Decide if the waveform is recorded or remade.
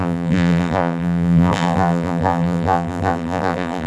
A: remade